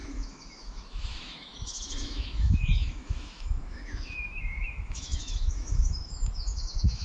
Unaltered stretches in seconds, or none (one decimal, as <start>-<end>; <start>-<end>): none